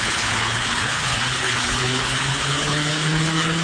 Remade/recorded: remade